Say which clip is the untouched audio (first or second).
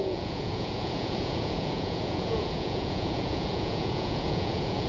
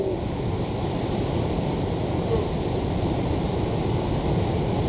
second